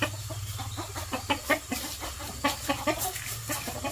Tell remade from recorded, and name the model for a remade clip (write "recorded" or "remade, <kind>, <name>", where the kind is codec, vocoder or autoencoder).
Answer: recorded